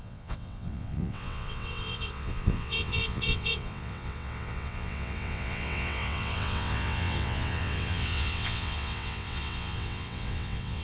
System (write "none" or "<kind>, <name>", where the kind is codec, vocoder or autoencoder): vocoder, WaveNeXt